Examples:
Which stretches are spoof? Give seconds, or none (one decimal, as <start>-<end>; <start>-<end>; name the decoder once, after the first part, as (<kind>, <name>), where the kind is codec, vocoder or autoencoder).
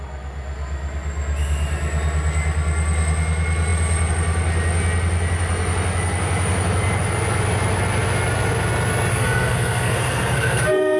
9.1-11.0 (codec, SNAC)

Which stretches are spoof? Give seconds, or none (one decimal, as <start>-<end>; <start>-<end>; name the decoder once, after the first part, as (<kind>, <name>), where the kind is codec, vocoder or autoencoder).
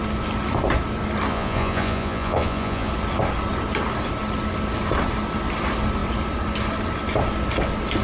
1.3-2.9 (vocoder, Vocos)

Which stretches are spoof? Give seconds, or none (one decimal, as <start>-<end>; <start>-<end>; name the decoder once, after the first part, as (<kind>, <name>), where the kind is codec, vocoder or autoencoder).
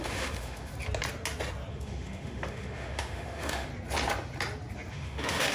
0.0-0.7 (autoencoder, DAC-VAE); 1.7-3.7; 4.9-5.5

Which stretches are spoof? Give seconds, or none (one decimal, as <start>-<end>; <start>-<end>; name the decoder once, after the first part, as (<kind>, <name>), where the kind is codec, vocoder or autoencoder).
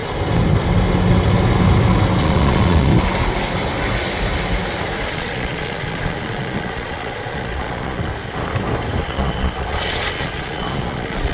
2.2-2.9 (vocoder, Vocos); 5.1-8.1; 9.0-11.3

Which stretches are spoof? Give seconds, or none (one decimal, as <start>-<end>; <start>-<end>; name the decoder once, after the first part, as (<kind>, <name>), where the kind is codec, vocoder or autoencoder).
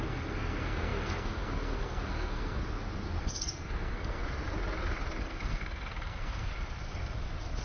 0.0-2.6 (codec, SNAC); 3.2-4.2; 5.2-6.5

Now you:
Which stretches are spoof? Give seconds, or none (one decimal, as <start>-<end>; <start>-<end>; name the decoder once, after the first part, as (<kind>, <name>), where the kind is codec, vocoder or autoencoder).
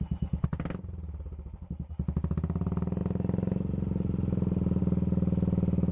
none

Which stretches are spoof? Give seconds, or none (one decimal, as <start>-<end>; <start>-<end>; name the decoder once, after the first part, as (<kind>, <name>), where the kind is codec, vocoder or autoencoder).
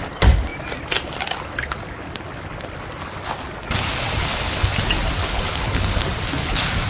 4.2-4.7 (codec, HILCodec); 5.2-6.0